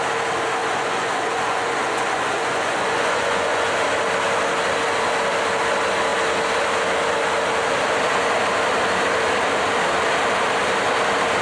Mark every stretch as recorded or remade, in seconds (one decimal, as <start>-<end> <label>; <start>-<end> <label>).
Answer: 0.0-0.6 recorded; 0.6-3.7 remade; 3.7-11.4 recorded